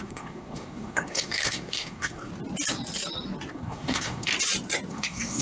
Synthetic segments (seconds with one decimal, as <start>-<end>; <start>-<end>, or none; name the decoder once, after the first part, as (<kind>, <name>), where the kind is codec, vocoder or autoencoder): 0.0-2.3 (codec, SNAC); 3.5-4.3; 4.9-5.4